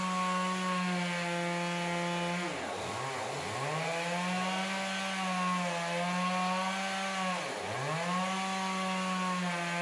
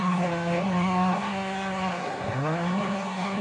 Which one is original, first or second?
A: first